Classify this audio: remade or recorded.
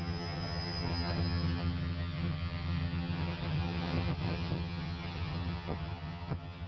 remade